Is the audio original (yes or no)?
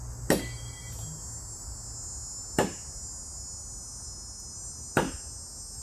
yes